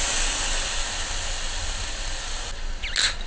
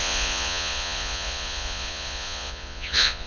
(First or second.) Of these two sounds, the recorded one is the first